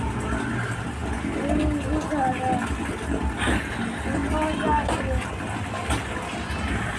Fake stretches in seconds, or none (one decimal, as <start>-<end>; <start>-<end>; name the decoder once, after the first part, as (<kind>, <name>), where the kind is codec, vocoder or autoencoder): none

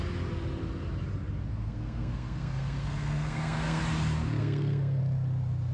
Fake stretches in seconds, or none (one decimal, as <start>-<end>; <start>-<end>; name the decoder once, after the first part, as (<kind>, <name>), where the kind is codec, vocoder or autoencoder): 1.5-3.8 (codec, SNAC); 4.4-5.0